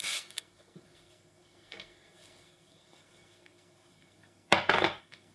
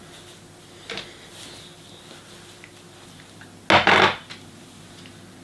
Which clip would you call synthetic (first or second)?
first